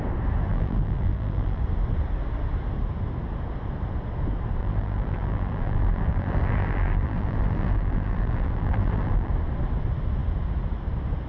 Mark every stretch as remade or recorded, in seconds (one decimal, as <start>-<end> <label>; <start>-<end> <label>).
0.0-0.5 recorded; 0.5-1.6 remade; 1.6-4.6 recorded; 4.6-9.3 remade; 9.3-11.3 recorded